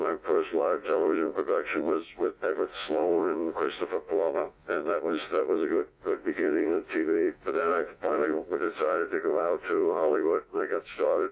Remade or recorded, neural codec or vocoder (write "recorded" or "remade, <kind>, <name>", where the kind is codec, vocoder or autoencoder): remade, vocoder, Vocos